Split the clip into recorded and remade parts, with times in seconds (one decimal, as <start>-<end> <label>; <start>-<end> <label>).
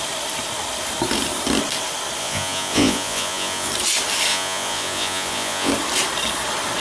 0.0-2.2 recorded; 2.2-3.7 remade; 3.7-4.3 recorded; 4.3-5.7 remade; 5.7-6.8 recorded